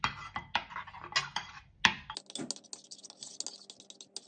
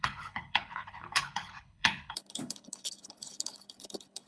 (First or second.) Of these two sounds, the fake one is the second